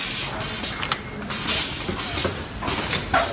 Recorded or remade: recorded